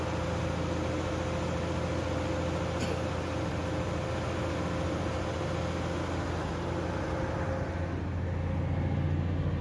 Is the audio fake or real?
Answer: real